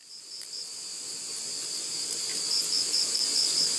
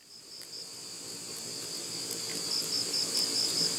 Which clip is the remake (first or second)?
first